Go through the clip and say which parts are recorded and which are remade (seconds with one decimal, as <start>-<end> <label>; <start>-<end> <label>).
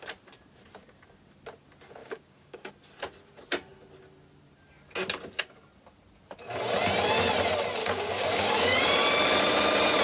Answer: 0.0-2.0 recorded; 2.0-2.7 remade; 2.7-7.8 recorded; 7.8-8.8 remade; 8.8-10.0 recorded